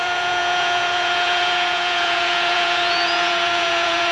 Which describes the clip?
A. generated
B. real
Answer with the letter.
A